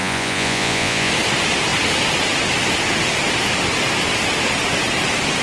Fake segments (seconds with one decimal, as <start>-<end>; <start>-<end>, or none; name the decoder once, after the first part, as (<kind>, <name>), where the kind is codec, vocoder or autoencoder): 0.0-1.1 (vocoder, Vocos)